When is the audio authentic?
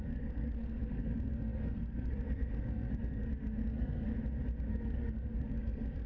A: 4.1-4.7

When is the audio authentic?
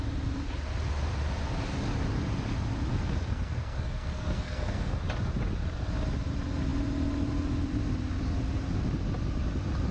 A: 0.0-2.9; 5.0-9.9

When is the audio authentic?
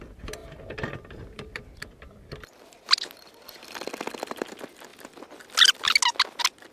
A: 0.0-0.4; 1.7-6.7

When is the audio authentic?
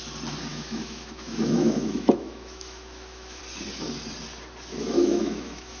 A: 0.0-0.5; 3.4-4.8